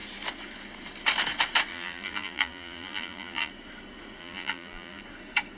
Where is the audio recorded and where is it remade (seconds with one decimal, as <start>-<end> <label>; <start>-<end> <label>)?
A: 0.0-1.7 recorded; 1.7-3.5 remade; 3.5-4.2 recorded; 4.2-5.0 remade; 5.0-5.6 recorded